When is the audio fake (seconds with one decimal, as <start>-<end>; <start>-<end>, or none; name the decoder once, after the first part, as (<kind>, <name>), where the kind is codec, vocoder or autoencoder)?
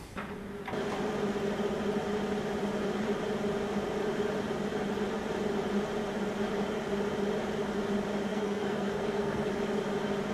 8.3-9.5 (codec, SNAC)